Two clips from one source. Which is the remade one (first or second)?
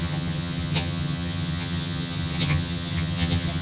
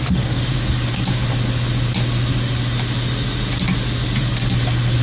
first